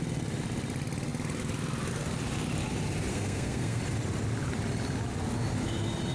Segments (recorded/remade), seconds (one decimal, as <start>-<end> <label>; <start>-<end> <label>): 0.0-3.1 recorded; 3.1-3.8 remade; 3.8-6.1 recorded